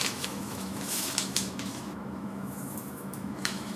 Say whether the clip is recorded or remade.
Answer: remade